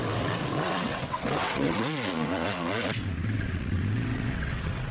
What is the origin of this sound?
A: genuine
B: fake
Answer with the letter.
B